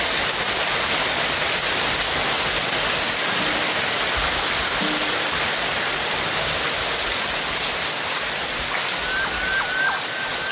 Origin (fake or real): real